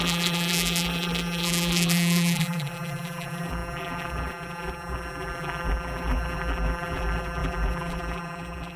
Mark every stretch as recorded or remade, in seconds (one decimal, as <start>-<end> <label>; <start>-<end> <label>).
0.0-8.8 remade